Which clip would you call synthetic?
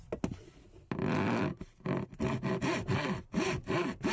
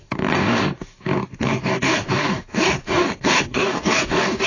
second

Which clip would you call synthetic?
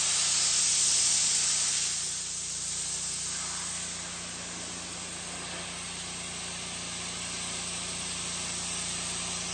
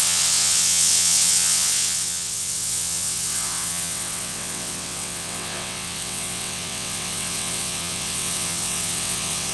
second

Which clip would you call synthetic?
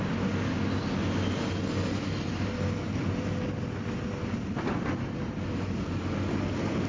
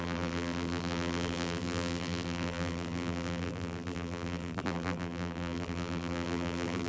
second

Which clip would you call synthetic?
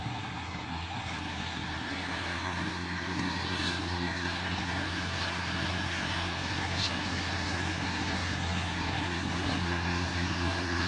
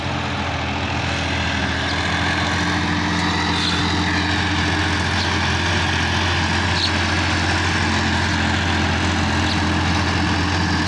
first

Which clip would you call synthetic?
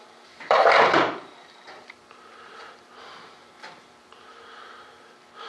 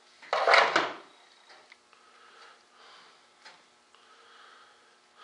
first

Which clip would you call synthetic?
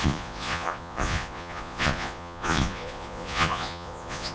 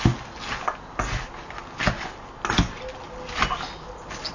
first